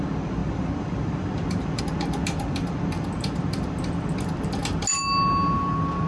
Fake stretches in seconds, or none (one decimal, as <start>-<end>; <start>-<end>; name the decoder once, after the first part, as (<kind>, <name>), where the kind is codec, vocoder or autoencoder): 0.4-1.8 (vocoder, BigVGAN v2)